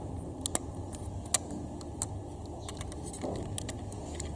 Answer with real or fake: real